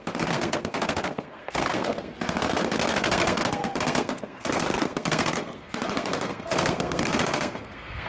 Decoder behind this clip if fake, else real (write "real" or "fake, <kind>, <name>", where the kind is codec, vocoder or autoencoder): fake, codec, SNAC